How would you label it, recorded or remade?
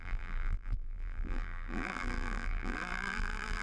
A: remade